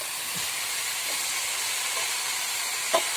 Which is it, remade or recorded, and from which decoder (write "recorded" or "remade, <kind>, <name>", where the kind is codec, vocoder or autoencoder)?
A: recorded